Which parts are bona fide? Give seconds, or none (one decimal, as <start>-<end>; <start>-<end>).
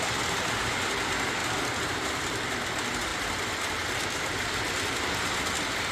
0.0-3.1; 4.0-5.9